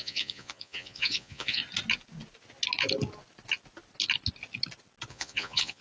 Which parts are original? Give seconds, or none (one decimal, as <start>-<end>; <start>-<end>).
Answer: 1.6-5.1